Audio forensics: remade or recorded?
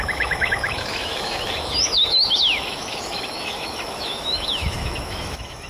remade